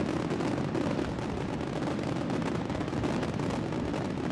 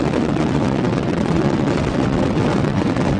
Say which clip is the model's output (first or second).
second